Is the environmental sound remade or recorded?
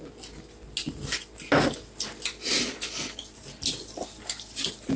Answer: recorded